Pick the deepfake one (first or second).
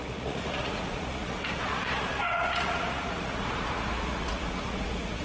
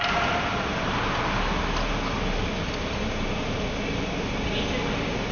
first